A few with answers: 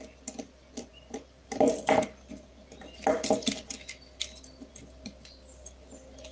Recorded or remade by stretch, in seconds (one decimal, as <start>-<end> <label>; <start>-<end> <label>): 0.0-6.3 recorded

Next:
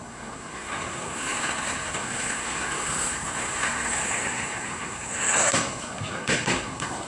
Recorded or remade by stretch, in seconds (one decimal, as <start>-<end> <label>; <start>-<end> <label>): 0.0-7.1 remade

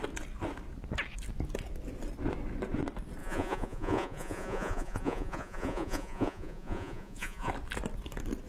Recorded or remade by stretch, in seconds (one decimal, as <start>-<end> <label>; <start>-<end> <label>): 0.0-3.2 recorded; 3.2-7.5 remade; 7.5-8.5 recorded

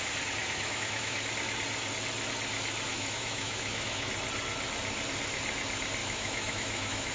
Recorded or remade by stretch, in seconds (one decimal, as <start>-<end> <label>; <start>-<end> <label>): 0.0-0.4 recorded; 0.4-1.2 remade; 1.2-2.9 recorded; 2.9-4.1 remade; 4.1-6.0 recorded; 6.0-7.1 remade

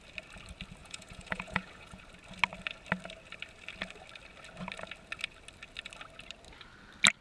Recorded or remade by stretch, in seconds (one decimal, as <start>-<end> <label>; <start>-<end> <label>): 0.0-0.8 recorded; 0.8-2.0 remade; 2.0-7.2 recorded